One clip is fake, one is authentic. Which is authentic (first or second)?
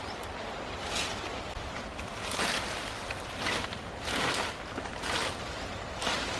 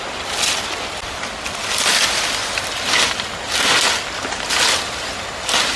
second